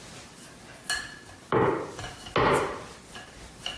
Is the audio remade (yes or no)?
no